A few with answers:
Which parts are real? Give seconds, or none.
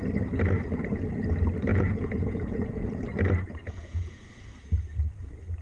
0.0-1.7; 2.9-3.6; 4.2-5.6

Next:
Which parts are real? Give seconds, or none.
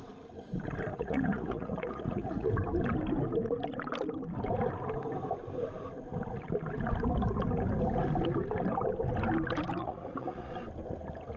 0.0-0.9; 2.5-9.8; 10.5-11.4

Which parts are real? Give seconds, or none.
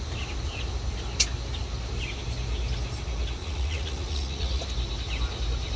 0.0-3.4; 4.6-5.8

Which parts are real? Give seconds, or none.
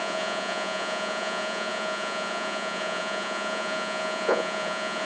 none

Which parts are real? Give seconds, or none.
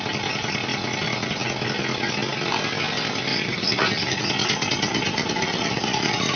0.0-3.3; 4.2-4.9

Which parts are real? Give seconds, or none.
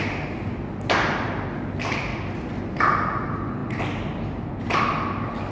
0.0-5.5